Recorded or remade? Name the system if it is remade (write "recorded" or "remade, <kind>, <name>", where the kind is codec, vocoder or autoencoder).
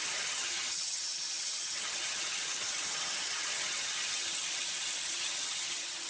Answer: remade, vocoder, HiFi-GAN